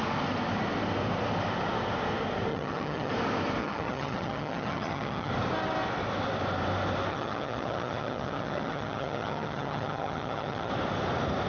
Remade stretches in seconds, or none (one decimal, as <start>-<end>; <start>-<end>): 2.5-3.1; 3.6-5.3; 7.1-10.7